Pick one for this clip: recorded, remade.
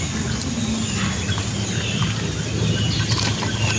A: recorded